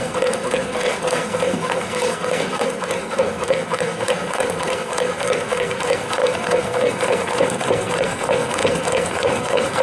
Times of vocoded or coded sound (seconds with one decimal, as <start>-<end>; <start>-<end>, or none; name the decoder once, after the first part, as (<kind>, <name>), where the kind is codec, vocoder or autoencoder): 0.0-9.8 (codec, SNAC)